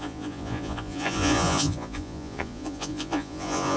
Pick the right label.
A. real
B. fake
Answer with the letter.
B